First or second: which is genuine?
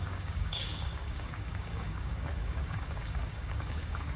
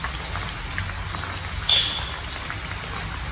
second